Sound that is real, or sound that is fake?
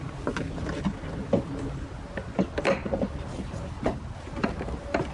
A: real